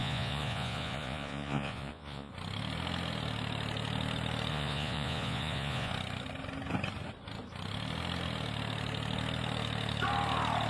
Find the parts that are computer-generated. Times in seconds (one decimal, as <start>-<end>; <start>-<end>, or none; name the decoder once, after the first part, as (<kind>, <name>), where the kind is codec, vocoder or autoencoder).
0.0-2.3 (vocoder, Vocos); 4.5-5.9